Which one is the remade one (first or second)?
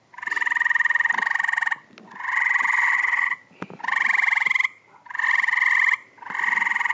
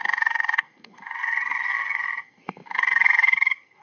second